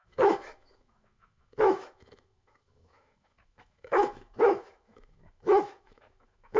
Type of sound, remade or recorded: remade